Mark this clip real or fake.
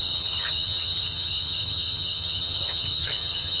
fake